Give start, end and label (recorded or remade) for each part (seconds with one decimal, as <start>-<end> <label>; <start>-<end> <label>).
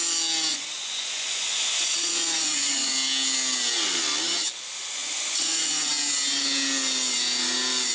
0.0-0.5 recorded; 0.5-2.9 remade; 2.9-5.0 recorded; 5.0-5.9 remade; 5.9-7.9 recorded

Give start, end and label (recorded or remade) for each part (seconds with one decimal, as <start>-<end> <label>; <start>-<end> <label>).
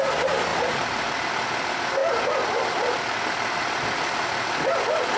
0.0-0.5 remade; 0.5-1.3 recorded; 1.3-2.0 remade; 2.0-5.2 recorded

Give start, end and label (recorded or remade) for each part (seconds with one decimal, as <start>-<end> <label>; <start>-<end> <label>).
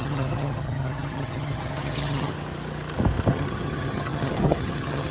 0.0-2.3 remade; 2.3-3.3 recorded; 3.3-5.1 remade